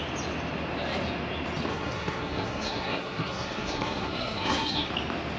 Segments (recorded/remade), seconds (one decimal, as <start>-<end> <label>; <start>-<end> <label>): 0.0-1.7 recorded; 1.7-4.9 remade; 4.9-5.4 recorded